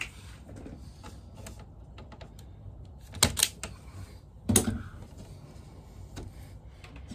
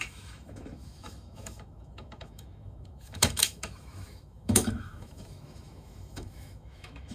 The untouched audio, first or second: first